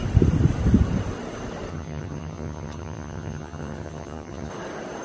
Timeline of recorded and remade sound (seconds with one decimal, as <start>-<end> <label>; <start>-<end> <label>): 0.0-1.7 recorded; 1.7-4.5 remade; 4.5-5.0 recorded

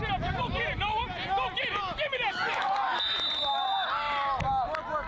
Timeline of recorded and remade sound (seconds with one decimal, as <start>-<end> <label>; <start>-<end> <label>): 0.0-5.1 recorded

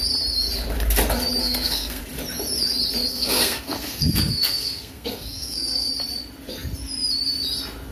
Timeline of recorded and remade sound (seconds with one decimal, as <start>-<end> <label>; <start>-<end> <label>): 0.0-1.4 recorded; 1.4-2.0 remade; 2.0-3.1 recorded; 3.1-5.9 remade; 5.9-7.9 recorded

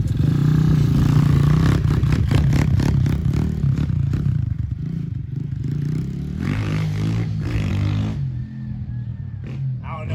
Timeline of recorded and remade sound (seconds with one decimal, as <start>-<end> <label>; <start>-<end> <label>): 0.0-3.2 recorded; 3.2-7.7 remade; 7.7-9.1 recorded; 9.1-10.1 remade